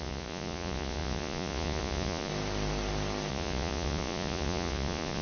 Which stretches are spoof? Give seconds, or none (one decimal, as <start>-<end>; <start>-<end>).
0.0-2.3; 3.3-5.2